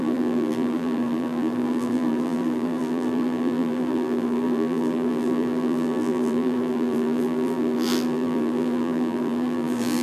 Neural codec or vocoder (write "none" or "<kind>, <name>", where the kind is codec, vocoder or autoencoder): vocoder, BigVGAN v2